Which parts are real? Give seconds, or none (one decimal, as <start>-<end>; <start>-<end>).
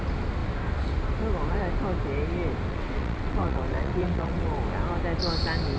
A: 0.0-2.7; 4.6-5.8